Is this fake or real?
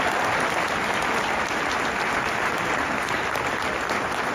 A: real